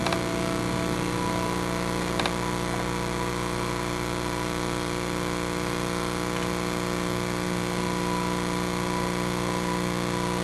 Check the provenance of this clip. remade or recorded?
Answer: remade